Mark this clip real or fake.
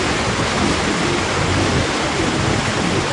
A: real